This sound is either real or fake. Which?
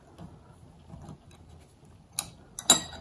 real